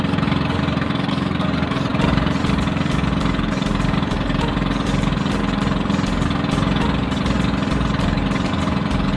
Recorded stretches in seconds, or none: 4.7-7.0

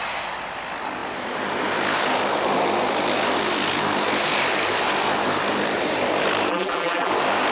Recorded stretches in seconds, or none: 0.0-6.5; 7.1-7.5

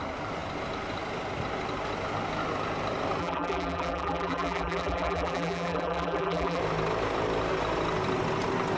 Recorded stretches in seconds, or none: 0.0-3.2; 6.6-8.8

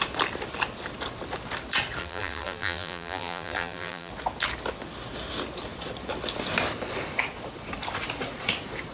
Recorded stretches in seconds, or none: 0.0-2.0; 4.1-8.9

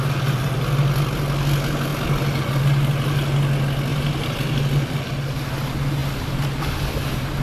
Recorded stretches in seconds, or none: 0.0-3.9; 4.6-6.0; 6.7-7.4

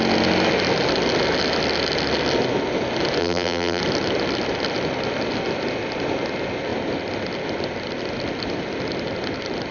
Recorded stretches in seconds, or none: 0.0-3.2; 3.8-9.7